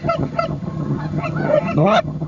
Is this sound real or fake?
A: fake